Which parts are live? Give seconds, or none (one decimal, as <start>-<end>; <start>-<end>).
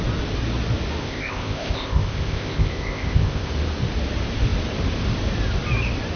0.0-1.0; 3.5-6.2